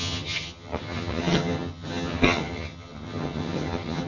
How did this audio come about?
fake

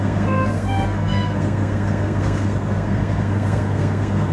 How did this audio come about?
fake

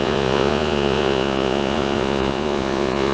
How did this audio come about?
fake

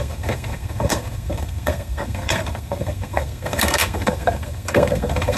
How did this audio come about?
fake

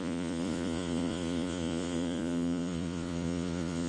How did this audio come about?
fake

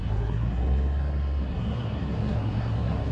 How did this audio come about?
fake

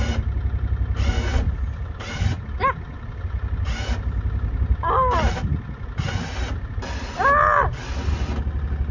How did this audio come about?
real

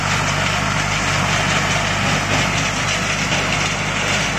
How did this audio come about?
real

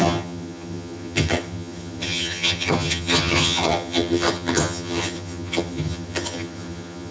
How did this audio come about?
fake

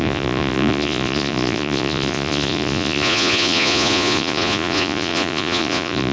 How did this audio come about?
fake